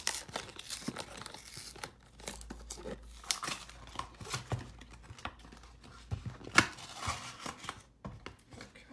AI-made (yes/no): no